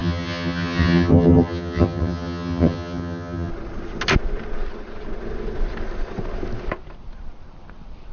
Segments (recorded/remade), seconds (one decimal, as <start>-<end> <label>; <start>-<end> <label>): 0.0-3.5 remade; 3.5-8.1 recorded